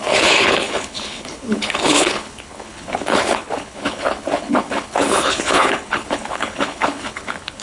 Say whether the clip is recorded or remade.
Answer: remade